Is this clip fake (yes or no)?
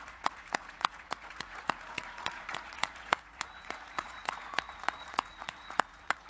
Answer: yes